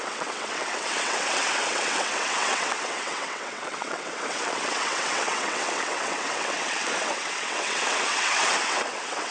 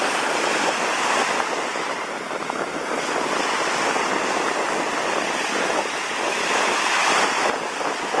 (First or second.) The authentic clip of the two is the second